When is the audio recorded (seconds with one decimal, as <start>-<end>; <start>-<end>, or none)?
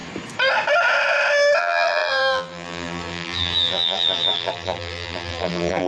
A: 0.0-1.6